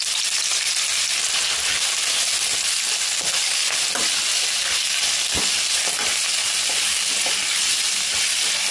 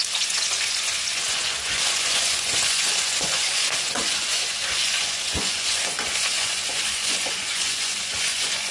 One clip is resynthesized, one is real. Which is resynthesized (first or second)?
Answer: second